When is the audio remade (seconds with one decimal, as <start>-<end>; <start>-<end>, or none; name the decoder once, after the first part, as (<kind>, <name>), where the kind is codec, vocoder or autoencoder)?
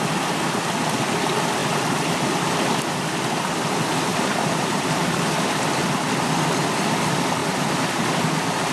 4.1-5.7 (vocoder, BigVGAN v2); 7.4-8.2